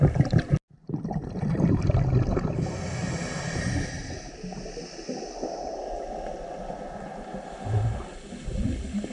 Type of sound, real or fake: real